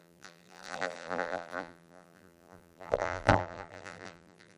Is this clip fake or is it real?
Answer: fake